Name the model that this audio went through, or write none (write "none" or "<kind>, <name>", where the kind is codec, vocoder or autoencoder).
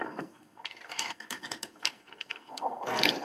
codec, SNAC